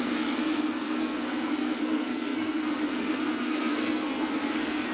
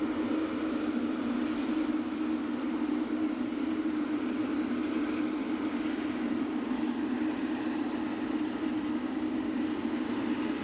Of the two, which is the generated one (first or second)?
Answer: first